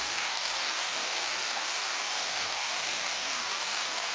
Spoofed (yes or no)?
yes